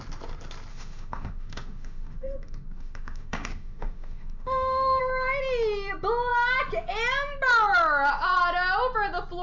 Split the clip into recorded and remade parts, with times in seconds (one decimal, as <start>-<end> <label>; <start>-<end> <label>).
0.0-0.7 recorded; 0.7-5.0 remade; 5.0-9.4 recorded